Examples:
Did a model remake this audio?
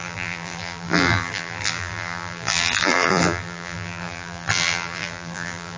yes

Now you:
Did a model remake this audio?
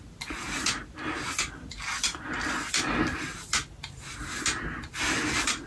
no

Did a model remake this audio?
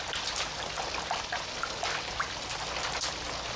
no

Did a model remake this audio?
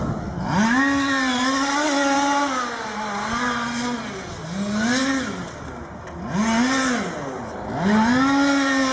no